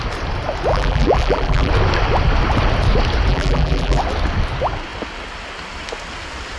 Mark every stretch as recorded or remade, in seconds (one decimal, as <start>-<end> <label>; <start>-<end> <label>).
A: 0.0-0.7 recorded; 0.7-1.7 remade; 1.7-3.3 recorded; 3.3-4.0 remade; 4.0-6.6 recorded